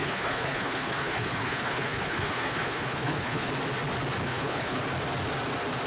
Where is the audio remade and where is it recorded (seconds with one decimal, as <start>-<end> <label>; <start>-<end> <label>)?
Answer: 0.0-3.5 remade; 3.5-4.3 recorded; 4.3-4.8 remade; 4.8-5.9 recorded